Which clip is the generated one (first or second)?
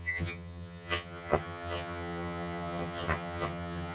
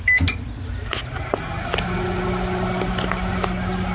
first